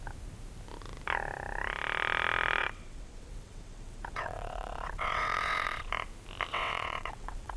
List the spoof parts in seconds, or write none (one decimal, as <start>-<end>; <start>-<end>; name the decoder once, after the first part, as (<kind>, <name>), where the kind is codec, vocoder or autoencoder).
2.6-5.9 (vocoder, WaveNeXt); 6.5-7.6

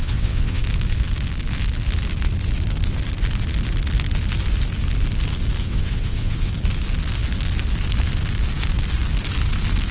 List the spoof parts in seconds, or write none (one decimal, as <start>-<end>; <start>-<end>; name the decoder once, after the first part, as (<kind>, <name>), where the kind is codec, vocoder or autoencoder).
0.0-0.6 (vocoder, WaveNeXt); 5.6-6.5